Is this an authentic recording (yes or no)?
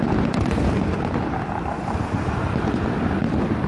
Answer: no